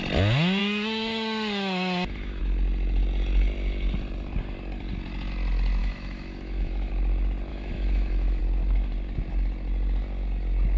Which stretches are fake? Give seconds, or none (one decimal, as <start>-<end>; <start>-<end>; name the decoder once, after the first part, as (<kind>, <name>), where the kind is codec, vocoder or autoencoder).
0.6-2.4 (autoencoder, DAC-VAE); 5.8-6.9; 7.5-8.4